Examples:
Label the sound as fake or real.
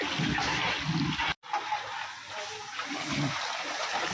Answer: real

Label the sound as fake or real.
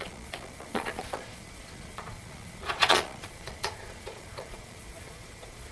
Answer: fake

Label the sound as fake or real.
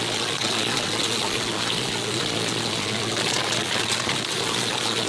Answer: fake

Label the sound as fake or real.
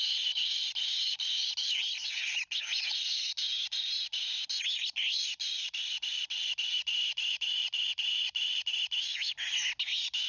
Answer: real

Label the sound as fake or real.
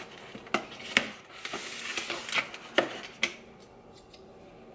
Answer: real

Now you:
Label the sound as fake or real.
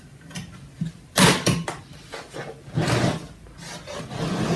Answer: real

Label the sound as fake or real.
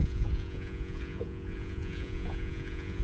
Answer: fake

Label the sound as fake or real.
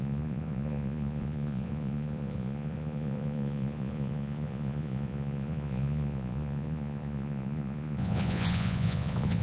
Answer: fake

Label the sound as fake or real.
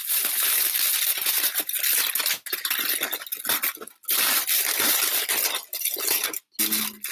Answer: real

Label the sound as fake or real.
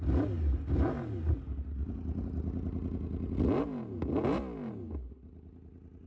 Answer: real